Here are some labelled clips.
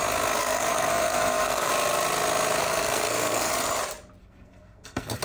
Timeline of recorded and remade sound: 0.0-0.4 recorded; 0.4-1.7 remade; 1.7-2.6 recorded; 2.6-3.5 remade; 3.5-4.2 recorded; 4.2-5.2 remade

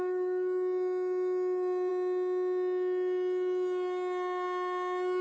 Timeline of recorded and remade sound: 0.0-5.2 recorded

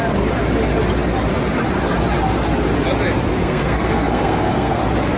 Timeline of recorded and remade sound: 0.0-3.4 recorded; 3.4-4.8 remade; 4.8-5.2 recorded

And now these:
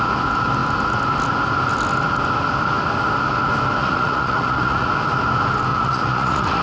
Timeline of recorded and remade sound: 0.0-3.8 recorded; 3.8-4.9 remade; 4.9-5.7 recorded; 5.7-6.6 remade

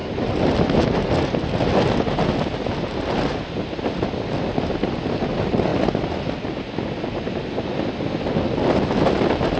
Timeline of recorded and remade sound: 0.0-9.6 recorded

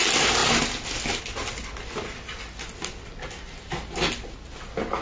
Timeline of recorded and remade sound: 0.0-5.0 recorded